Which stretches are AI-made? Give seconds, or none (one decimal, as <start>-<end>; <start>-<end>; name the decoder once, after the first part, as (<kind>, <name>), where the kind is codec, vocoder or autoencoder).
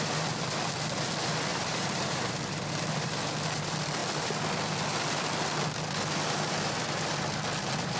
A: 1.5-2.3 (vocoder, BigVGAN v2)